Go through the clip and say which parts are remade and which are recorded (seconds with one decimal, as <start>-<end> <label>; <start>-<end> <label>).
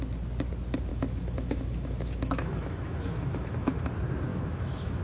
0.0-0.9 recorded; 0.9-3.9 remade; 3.9-4.3 recorded; 4.3-5.0 remade